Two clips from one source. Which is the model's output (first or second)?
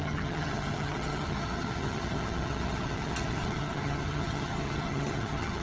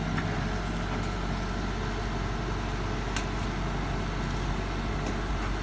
first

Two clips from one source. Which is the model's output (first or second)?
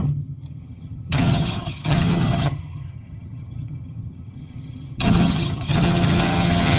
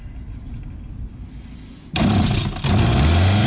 first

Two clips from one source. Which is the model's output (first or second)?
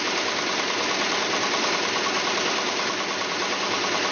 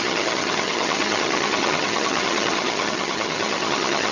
second